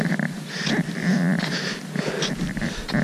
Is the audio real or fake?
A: real